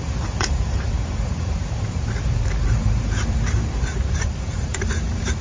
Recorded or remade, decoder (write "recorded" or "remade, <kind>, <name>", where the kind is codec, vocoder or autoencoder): remade, vocoder, BigVGAN v2